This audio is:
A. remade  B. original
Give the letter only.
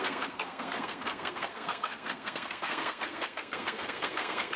A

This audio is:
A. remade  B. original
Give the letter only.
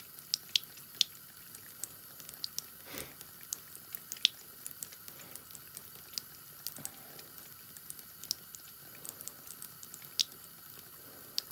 B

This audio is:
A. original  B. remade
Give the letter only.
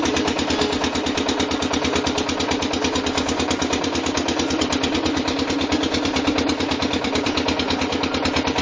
B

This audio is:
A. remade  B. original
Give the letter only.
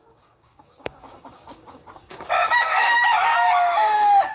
A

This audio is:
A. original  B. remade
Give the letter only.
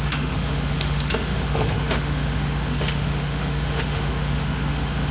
B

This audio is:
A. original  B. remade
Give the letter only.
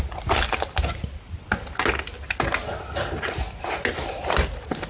A